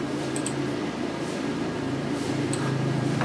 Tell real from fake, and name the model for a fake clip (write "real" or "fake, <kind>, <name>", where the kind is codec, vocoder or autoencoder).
fake, vocoder, BigVGAN v2